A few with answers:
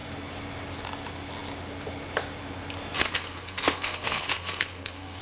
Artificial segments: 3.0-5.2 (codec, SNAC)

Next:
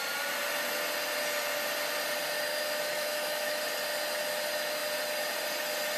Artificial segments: 2.5-3.6 (autoencoder, DAC-VAE)

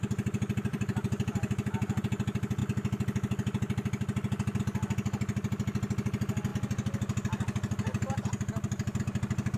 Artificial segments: 0.7-2.0 (vocoder, BigVGAN v2)

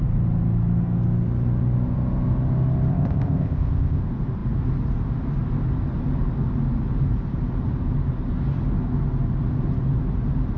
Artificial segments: 2.9-4.0 (codec, ZipCodec)

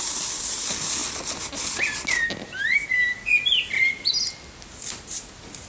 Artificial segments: none

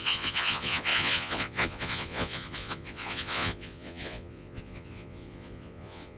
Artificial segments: 0.0-6.2 (vocoder, Vocos)

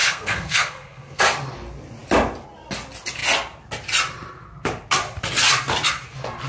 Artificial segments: 0.0-1.2 (codec, SNAC)